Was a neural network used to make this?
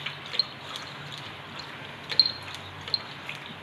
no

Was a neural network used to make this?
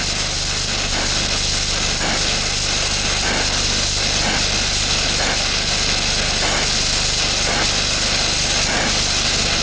no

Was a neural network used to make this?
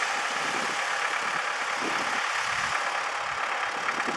no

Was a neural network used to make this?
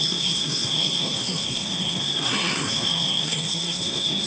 yes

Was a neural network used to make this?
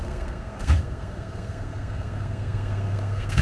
yes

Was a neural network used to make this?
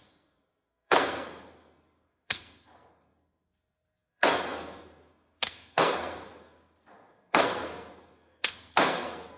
yes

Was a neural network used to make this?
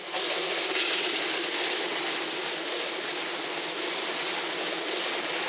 no